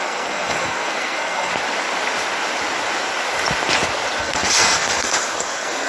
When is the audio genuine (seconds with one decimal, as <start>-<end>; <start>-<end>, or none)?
1.5-4.2